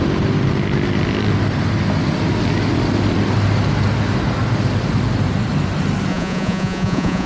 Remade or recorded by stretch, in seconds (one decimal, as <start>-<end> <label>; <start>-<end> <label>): 0.0-6.1 recorded; 6.1-7.3 remade